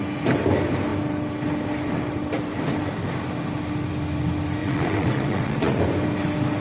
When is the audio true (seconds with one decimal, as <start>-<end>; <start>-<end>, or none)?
0.0-4.6; 5.8-6.6